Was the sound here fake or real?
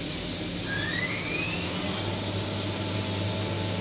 real